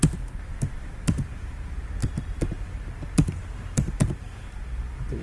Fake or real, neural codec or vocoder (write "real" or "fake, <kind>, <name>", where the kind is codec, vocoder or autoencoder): real